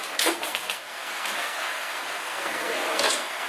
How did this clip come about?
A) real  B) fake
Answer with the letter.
B